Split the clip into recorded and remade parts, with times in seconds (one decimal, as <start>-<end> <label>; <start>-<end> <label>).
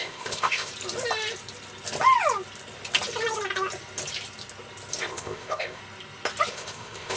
0.0-0.7 remade; 0.7-5.0 recorded; 5.0-5.8 remade; 5.8-6.5 recorded; 6.5-7.2 remade